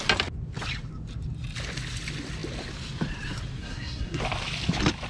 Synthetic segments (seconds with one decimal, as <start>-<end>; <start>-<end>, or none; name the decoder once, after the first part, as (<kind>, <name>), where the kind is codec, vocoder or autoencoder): 3.6-4.2 (codec, SNAC)